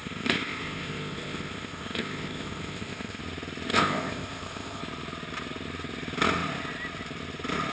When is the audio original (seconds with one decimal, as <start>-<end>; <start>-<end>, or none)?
3.2-3.7; 4.8-7.7